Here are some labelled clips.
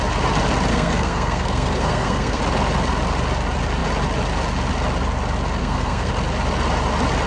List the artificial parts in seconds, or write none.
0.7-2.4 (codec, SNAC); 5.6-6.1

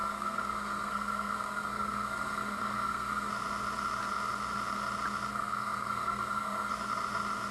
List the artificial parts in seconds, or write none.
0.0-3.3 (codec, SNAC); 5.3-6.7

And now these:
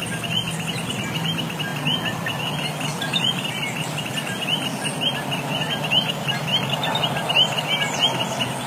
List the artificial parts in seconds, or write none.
none